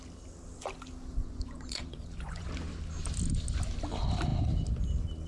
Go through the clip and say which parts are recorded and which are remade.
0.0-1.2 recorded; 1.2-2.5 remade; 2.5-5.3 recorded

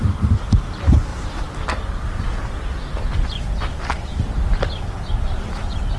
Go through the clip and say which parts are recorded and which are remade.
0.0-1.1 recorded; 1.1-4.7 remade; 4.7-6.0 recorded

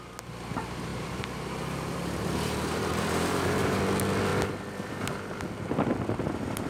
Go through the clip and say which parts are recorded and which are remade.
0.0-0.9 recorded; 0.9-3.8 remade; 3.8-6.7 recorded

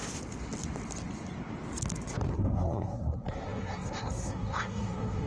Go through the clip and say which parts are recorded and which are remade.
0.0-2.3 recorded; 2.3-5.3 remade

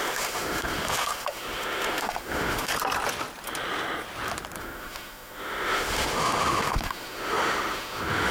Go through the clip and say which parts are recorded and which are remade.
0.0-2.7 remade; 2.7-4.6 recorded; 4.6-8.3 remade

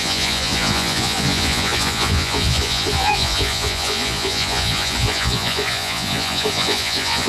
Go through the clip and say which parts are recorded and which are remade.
0.0-7.3 remade